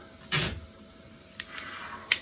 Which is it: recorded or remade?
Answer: recorded